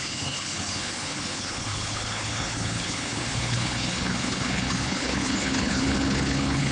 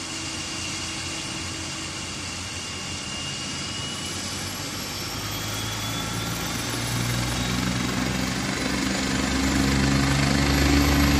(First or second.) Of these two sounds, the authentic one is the second